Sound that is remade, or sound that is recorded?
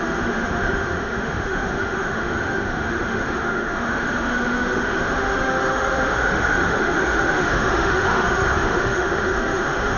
remade